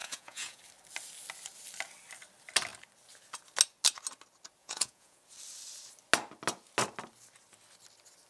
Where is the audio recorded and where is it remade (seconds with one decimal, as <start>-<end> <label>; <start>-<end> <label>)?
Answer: 0.0-0.6 remade; 0.6-4.6 recorded; 4.6-5.2 remade; 5.2-8.3 recorded